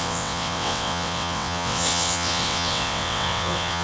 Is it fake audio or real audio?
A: fake